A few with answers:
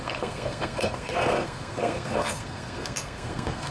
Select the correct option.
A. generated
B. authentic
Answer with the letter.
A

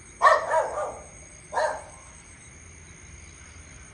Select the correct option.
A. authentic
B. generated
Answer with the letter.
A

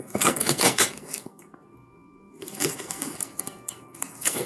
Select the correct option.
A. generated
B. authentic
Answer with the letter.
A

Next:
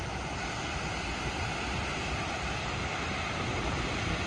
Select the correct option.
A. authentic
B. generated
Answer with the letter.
A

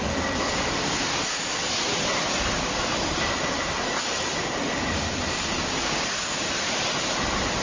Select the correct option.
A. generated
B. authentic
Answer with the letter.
B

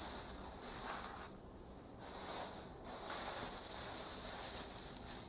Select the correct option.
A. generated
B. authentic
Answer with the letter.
B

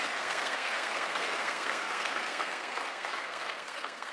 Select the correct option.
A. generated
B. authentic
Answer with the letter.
A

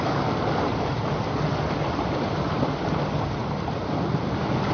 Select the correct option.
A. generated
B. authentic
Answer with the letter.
B